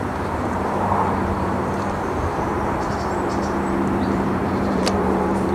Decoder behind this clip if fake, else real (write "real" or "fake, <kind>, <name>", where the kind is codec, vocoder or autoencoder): fake, vocoder, BigVGAN v2